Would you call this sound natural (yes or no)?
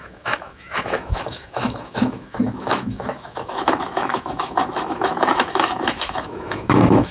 no